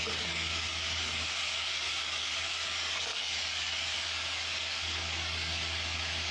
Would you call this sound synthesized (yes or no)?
yes